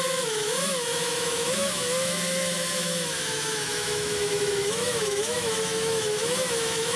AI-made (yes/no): yes